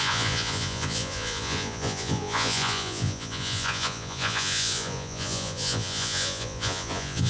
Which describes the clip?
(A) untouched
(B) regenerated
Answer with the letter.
B